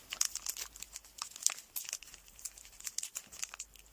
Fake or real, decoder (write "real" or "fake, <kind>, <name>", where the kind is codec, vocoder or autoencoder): real